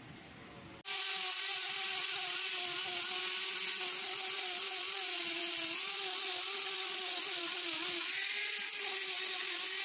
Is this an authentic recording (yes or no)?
yes